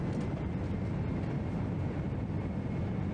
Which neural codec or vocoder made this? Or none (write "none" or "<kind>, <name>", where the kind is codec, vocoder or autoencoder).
none